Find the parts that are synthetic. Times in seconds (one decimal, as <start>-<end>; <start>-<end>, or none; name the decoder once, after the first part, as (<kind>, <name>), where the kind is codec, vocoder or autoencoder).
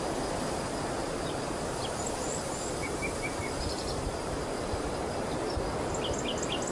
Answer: 1.0-5.0 (vocoder, BigVGAN v2)